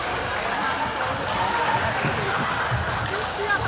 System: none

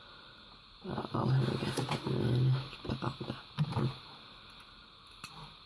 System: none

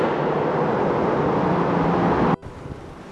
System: none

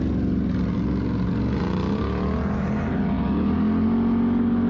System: none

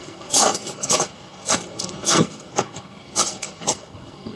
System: codec, SNAC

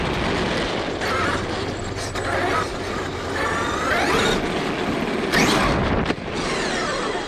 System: none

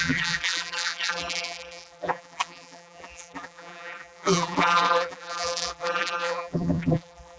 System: vocoder, BigVGAN v2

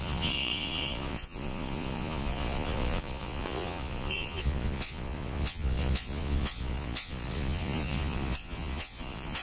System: vocoder, Vocos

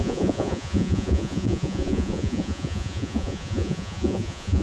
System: vocoder, Vocos